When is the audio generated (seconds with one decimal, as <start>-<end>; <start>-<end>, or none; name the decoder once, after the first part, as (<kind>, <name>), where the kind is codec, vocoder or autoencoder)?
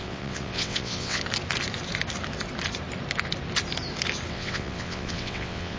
0.0-1.2 (vocoder, WaveNeXt); 4.3-5.8